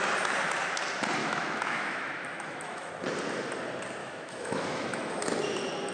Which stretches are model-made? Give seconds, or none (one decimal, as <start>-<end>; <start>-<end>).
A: 1.2-2.9; 4.0-5.1